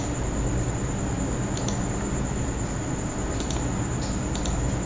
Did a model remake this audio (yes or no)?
no